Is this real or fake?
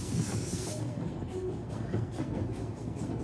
fake